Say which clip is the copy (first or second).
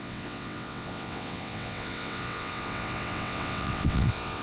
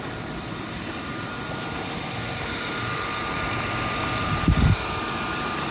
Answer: first